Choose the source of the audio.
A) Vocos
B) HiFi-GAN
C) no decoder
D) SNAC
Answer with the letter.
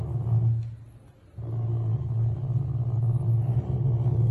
C